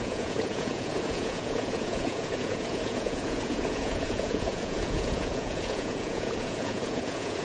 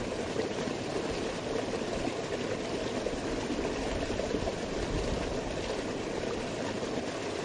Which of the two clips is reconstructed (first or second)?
first